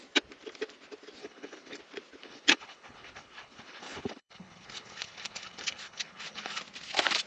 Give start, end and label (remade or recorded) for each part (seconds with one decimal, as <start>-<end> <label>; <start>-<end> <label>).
0.0-1.2 recorded; 1.2-1.8 remade; 1.8-2.2 recorded; 2.2-6.6 remade; 6.6-7.3 recorded